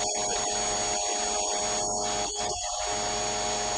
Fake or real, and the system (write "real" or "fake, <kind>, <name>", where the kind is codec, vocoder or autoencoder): real